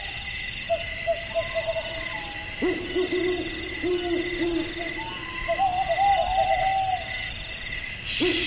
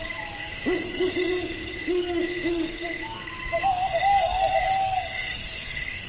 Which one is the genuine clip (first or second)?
first